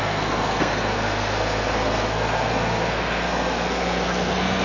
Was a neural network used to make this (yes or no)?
yes